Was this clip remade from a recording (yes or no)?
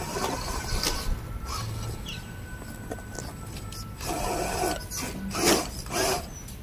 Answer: no